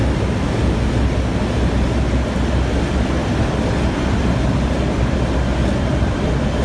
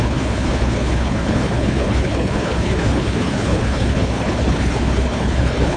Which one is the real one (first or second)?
first